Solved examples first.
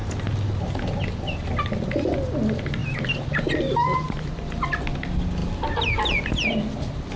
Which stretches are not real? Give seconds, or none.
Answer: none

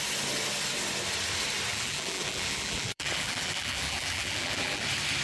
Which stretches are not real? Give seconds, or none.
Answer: 1.7-4.8 (vocoder, BigVGAN v2)

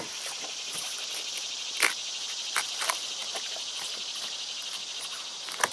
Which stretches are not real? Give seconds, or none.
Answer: 0.0-4.6 (vocoder, BigVGAN v2)